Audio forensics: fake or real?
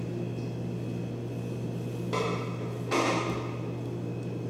real